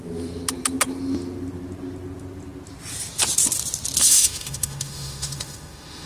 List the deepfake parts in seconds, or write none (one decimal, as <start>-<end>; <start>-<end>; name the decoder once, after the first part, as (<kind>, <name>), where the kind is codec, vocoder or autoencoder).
4.0-6.1 (autoencoder, DAC-VAE)